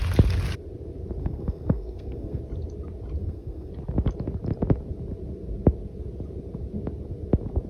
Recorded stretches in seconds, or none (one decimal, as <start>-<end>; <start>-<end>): 0.0-1.2; 2.4-3.2; 3.7-7.7